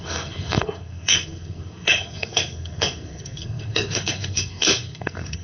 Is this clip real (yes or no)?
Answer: no